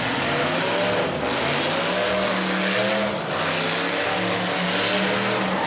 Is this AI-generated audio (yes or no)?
no